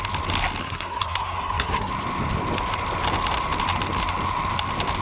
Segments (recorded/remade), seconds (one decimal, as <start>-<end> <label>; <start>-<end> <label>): 0.0-0.6 recorded; 0.6-1.9 remade; 1.9-5.0 recorded